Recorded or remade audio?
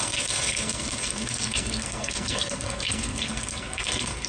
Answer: remade